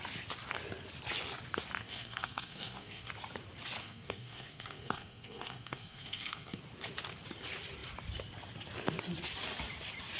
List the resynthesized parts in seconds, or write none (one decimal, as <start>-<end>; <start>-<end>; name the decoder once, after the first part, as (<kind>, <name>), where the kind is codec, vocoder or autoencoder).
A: 1.8-3.1 (codec, SNAC); 3.8-6.6

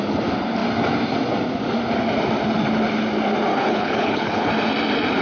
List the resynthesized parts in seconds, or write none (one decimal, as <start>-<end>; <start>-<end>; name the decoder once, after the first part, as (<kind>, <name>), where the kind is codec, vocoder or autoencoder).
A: 3.5-4.5 (codec, HILCodec)

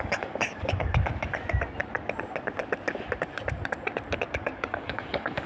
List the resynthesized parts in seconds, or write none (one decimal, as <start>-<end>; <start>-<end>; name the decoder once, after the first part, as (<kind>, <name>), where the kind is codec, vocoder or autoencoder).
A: 0.0-1.1 (codec, DAC); 4.4-5.5